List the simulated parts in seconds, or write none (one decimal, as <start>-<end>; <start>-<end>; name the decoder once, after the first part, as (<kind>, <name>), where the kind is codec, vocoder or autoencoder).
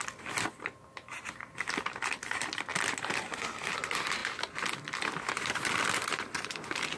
0.0-2.7 (vocoder, BigVGAN v2); 3.7-4.2; 5.2-7.0